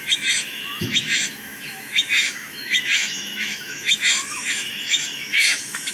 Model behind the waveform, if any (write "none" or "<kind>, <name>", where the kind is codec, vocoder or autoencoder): autoencoder, DAC-VAE